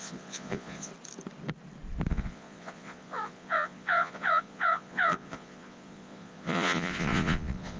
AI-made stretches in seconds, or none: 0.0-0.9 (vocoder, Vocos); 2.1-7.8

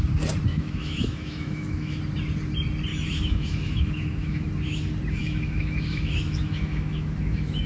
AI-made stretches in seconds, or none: 0.5-2.0 (autoencoder, DAC-VAE); 2.9-4.5; 5.2-7.7

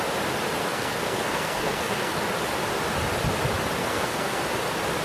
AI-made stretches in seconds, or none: 0.6-2.2 (codec, SNAC); 3.8-4.4

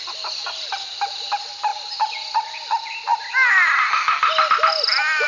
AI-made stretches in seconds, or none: none

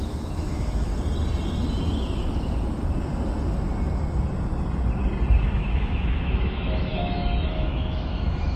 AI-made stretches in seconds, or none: 0.0-0.9 (autoencoder, DAC-VAE); 5.4-8.6

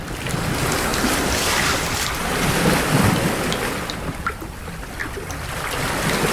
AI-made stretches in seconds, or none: none